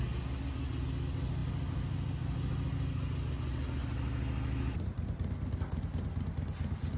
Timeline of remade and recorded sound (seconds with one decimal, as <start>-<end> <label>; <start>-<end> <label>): 0.0-7.0 recorded